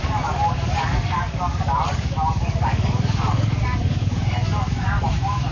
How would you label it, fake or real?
fake